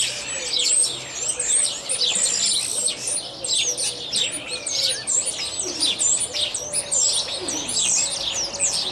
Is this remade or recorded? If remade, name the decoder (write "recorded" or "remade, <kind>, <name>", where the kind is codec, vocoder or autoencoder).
recorded